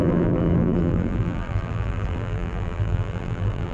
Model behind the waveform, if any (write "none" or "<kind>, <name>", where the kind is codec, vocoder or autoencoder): vocoder, BigVGAN v2